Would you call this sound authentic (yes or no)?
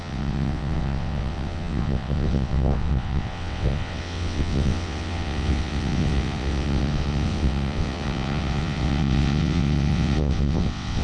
no